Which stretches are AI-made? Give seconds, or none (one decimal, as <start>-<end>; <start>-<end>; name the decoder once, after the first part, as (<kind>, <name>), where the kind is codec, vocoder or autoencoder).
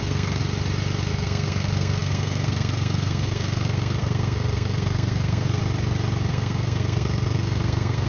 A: 0.0-0.4 (codec, SNAC); 1.1-5.6; 6.3-8.1